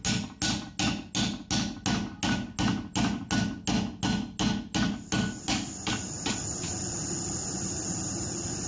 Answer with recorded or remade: recorded